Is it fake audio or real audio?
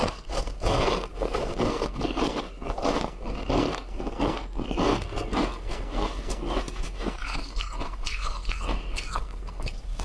fake